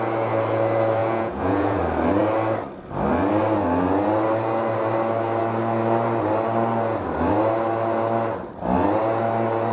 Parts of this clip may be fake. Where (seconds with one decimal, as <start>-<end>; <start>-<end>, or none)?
1.0-1.8

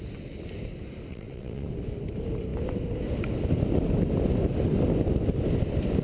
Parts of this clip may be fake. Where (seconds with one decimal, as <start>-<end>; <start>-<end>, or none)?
1.1-1.7

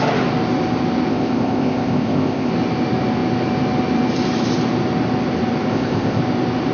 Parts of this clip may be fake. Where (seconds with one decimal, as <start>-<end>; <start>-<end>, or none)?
1.1-2.5; 5.7-6.2